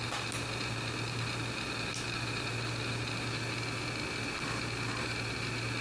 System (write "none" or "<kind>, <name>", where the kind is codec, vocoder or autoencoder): none